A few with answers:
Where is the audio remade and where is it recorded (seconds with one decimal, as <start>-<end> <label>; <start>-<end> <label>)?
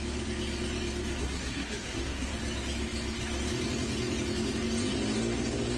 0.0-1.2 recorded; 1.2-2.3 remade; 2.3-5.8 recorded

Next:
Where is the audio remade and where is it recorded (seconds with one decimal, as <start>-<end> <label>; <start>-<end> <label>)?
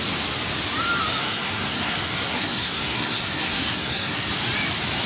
0.0-1.2 recorded; 1.2-4.3 remade; 4.3-5.1 recorded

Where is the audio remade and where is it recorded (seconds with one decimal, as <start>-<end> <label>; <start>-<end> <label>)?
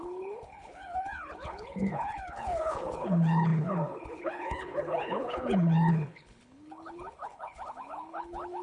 0.0-8.6 remade